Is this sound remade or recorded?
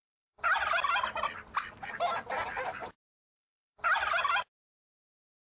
recorded